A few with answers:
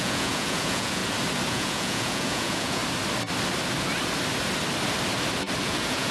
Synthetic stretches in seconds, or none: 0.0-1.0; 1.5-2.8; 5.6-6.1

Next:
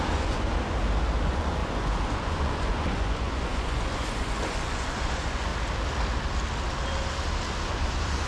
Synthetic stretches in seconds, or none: 0.0-0.5; 1.2-5.5; 7.7-8.3

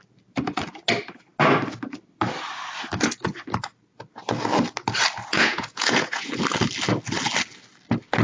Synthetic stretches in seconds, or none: 5.3-6.3

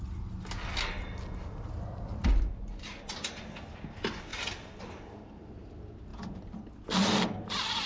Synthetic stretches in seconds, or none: none

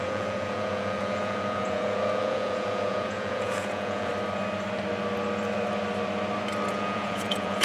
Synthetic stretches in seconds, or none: 0.0-4.1; 6.7-7.6

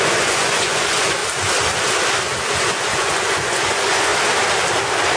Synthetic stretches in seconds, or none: 0.0-1.2; 2.5-4.1